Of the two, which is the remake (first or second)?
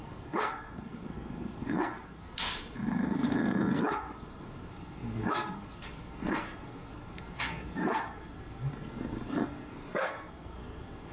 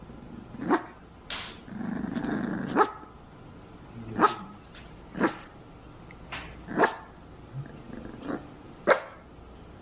first